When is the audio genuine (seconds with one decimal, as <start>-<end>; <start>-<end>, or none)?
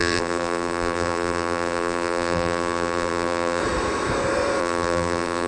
3.6-4.6